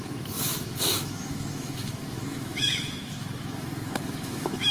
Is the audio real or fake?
fake